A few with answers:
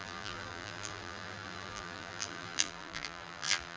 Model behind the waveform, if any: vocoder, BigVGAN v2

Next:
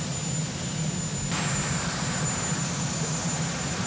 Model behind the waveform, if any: none